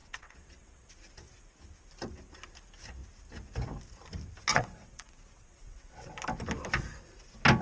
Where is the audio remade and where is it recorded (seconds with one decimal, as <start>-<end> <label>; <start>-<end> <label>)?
0.0-0.9 remade; 0.9-4.5 recorded; 4.5-6.1 remade; 6.1-7.6 recorded